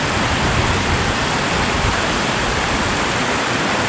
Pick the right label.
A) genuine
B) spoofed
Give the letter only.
B